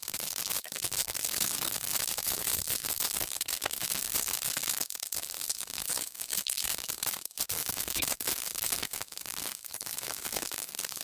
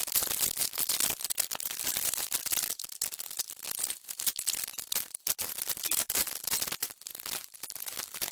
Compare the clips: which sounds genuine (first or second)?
second